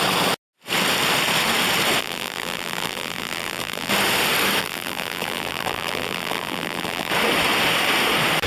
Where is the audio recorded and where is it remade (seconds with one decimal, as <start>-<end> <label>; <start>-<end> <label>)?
0.0-2.0 recorded; 2.0-3.9 remade; 3.9-4.6 recorded; 4.6-7.1 remade; 7.1-8.5 recorded